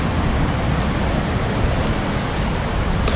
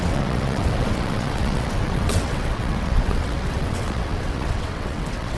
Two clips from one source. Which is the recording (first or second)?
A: first